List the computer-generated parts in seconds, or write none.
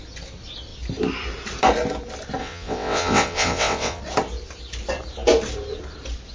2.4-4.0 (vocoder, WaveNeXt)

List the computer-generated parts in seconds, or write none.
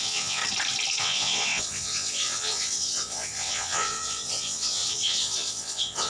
0.0-0.4 (vocoder, WaveNeXt); 1.0-6.1